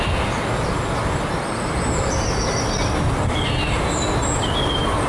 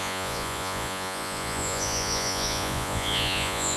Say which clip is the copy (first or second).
second